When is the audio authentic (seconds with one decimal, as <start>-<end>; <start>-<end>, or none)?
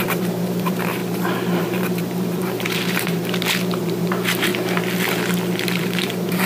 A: 1.0-1.6; 3.2-3.8; 4.5-5.8